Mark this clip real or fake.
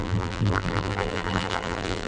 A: fake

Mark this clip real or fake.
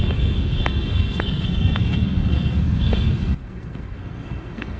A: fake